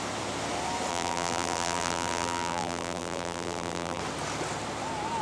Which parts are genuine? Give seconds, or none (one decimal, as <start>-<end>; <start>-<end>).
0.0-0.9; 4.0-5.2